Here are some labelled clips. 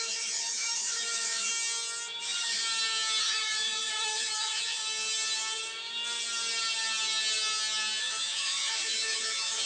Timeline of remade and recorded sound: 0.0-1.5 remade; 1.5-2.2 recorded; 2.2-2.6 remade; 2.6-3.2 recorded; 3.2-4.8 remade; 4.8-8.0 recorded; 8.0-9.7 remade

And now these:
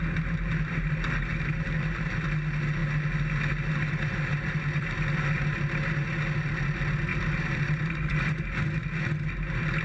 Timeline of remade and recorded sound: 0.0-4.3 recorded; 4.3-4.8 remade; 4.8-7.1 recorded; 7.1-8.2 remade; 8.2-9.8 recorded

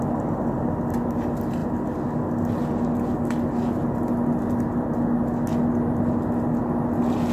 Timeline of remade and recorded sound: 0.0-7.3 recorded

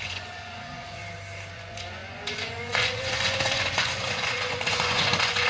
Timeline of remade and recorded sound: 0.0-1.0 remade; 1.0-1.5 recorded; 1.5-5.5 remade

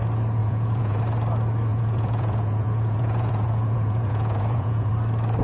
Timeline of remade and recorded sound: 0.0-0.4 recorded; 0.4-1.0 remade; 1.0-1.7 recorded; 1.7-4.9 remade; 4.9-5.4 recorded

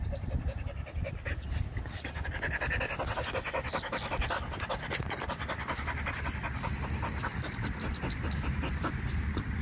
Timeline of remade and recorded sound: 0.0-9.6 recorded

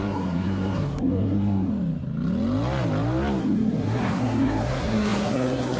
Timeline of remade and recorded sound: 0.0-1.7 remade; 1.7-3.4 recorded; 3.4-5.8 remade